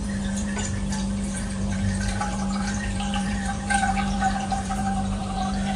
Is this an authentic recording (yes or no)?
no